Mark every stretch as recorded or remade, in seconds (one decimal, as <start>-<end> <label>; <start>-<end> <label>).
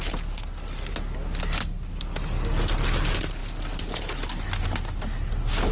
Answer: 0.0-5.7 recorded